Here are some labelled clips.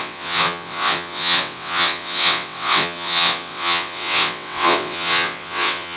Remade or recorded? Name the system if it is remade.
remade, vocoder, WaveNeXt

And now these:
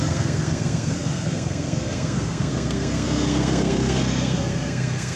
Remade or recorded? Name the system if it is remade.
remade, codec, SNAC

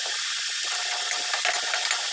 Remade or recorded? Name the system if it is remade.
recorded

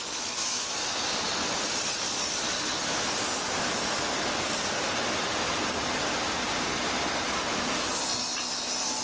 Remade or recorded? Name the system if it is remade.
recorded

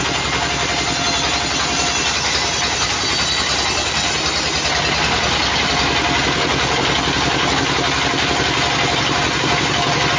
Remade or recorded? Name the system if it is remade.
recorded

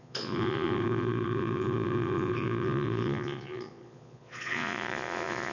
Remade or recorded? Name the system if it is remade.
remade, vocoder, Vocos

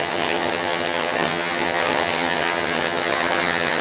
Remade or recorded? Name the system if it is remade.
remade, vocoder, HiFi-GAN